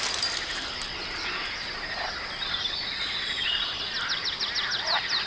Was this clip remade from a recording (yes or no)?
no